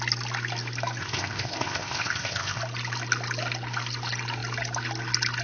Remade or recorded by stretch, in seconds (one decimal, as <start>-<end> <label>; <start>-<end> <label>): 0.0-1.0 recorded; 1.0-2.6 remade; 2.6-5.4 recorded